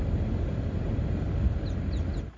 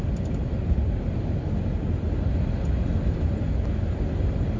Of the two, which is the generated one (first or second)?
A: second